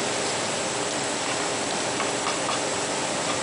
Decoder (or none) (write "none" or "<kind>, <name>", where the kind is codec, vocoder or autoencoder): none